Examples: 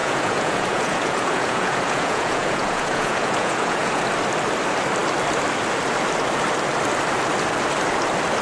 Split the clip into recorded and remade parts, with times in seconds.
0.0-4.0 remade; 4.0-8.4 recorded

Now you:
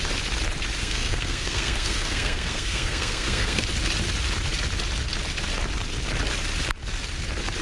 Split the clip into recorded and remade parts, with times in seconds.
0.0-0.8 recorded; 0.8-3.6 remade; 3.6-7.6 recorded